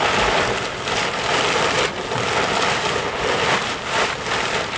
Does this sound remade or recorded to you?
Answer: recorded